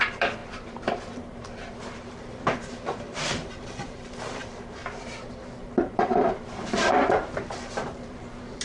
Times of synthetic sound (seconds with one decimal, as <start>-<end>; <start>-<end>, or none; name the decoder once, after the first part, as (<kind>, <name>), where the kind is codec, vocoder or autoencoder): 0.0-0.4 (vocoder, BigVGAN v2); 1.3-8.6